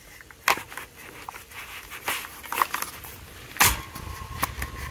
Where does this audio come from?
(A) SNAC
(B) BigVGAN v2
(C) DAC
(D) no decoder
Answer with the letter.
D